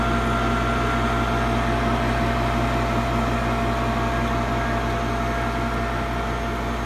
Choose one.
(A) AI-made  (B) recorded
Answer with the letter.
B